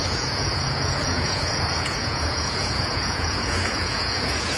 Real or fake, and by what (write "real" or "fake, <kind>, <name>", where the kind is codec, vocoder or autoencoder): fake, vocoder, Vocos